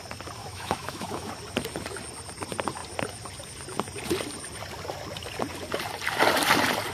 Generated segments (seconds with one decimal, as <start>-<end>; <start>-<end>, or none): 0.4-1.3